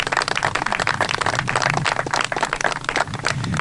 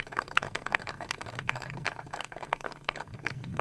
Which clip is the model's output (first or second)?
second